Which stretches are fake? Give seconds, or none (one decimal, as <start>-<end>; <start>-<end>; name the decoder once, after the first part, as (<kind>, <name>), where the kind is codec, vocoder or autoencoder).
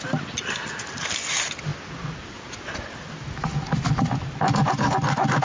none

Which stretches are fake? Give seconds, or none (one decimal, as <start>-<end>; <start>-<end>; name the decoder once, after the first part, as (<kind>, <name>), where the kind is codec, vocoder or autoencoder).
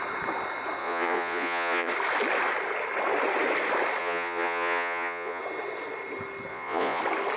0.8-1.9 (vocoder, Vocos); 4.0-5.4; 6.5-7.0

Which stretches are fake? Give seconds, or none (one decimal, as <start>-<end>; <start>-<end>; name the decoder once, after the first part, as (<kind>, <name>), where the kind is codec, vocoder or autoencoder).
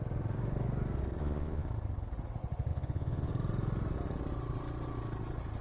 1.2-1.7 (vocoder, Vocos); 2.7-3.3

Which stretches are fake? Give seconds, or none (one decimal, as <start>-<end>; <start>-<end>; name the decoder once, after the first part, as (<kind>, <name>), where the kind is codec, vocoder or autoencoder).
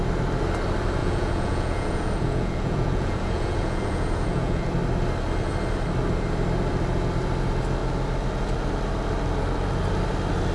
1.0-4.6 (vocoder, Vocos)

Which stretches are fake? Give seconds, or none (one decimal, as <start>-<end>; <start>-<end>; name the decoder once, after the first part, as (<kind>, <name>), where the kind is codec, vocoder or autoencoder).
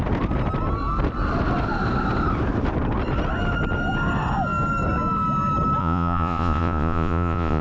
5.8-7.6 (vocoder, Vocos)